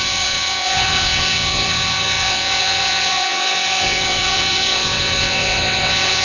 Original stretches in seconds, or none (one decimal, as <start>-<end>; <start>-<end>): none